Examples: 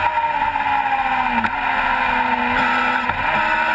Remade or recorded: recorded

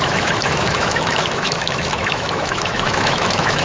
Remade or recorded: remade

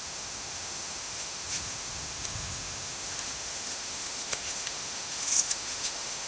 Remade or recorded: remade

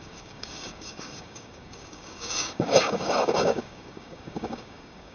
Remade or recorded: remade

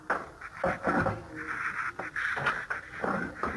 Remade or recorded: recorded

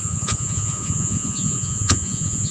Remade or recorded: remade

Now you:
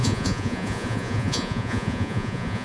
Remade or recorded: remade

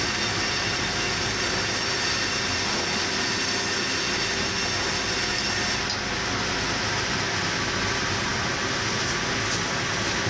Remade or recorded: recorded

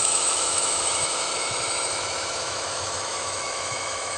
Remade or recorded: remade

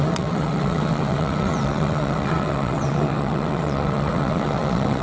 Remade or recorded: remade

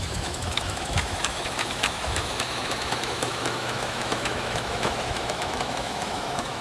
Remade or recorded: remade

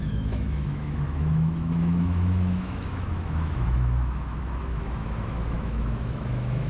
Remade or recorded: remade